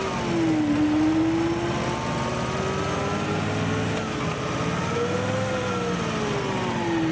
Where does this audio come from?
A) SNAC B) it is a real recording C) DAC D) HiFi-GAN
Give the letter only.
B